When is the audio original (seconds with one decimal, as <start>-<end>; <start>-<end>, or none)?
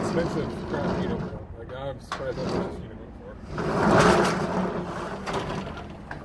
0.0-6.2